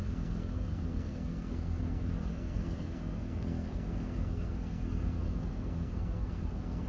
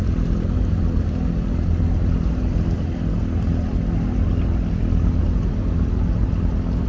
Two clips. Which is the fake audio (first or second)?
first